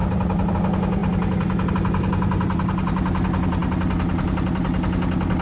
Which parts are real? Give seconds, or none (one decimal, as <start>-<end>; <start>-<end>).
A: 0.0-5.4